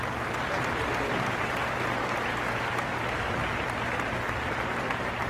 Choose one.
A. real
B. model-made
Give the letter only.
A